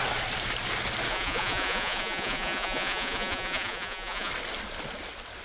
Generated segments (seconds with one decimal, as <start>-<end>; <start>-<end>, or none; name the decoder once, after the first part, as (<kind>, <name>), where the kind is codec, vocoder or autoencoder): 1.1-4.3 (vocoder, Vocos)